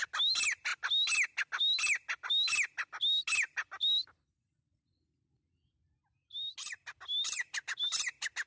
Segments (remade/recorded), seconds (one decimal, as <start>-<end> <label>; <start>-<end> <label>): 0.0-8.5 recorded